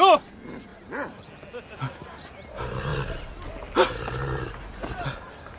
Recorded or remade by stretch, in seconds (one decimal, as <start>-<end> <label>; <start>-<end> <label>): 0.0-5.6 recorded

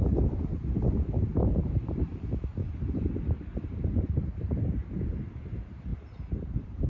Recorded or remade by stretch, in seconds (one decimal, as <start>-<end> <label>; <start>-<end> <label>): 0.0-2.1 remade; 2.1-3.7 recorded; 3.7-5.9 remade; 5.9-6.5 recorded; 6.5-6.9 remade